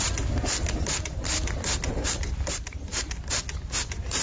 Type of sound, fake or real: real